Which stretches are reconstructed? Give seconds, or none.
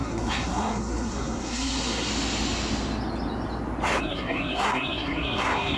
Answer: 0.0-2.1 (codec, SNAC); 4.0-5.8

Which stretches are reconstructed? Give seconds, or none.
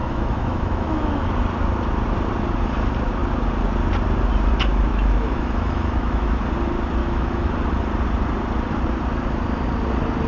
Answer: 0.0-1.3 (autoencoder, DAC-VAE); 4.9-6.4; 7.0-7.5